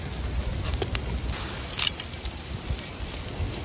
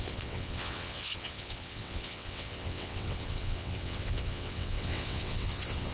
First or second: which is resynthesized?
second